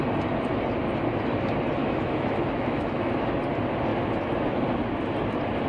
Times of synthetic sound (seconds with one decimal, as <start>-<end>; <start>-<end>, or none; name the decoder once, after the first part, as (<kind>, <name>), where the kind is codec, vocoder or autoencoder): 1.8-3.1 (autoencoder, DAC-VAE)